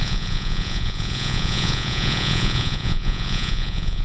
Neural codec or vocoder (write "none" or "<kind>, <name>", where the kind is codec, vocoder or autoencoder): vocoder, Vocos